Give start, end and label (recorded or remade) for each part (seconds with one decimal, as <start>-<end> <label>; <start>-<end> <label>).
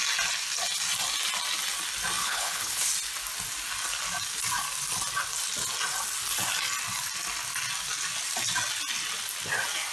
0.0-2.2 recorded; 2.2-2.9 remade; 2.9-9.9 recorded